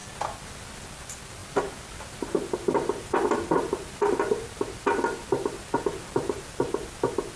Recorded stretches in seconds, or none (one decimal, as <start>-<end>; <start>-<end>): 0.0-7.4